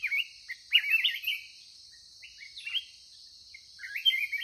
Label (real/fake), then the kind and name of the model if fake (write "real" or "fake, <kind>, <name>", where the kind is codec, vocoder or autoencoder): real